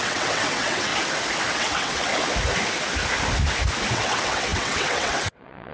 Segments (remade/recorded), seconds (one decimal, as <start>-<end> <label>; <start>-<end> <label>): 0.0-0.9 remade; 0.9-1.5 recorded; 1.5-2.1 remade; 2.1-3.9 recorded; 3.9-5.7 remade